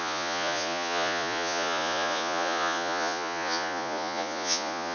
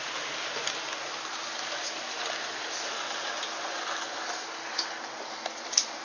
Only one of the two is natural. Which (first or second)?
second